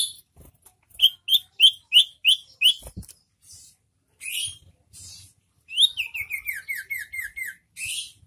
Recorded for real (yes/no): yes